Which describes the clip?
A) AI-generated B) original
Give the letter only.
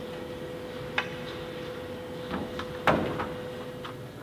B